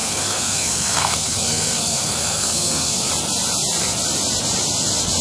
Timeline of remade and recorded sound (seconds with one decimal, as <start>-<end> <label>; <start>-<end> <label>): 0.0-3.1 remade; 3.1-5.2 recorded